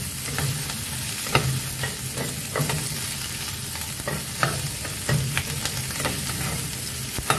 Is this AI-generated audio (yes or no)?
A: no